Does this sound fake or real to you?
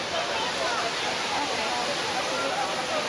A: real